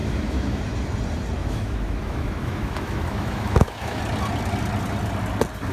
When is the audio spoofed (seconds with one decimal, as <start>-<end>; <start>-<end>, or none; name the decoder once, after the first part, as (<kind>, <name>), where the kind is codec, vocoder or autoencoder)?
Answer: 0.0-0.6 (autoencoder, DAC-VAE); 1.4-4.0